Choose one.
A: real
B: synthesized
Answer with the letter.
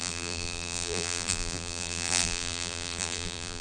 B